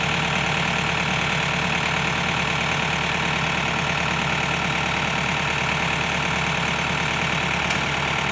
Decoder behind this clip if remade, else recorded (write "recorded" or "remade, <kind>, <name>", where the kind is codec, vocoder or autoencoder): recorded